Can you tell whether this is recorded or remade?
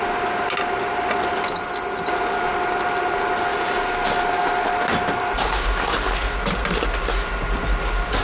recorded